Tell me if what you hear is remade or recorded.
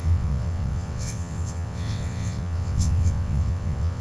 remade